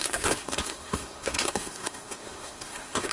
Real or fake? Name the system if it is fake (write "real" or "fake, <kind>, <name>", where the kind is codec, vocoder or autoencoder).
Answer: fake, codec, SNAC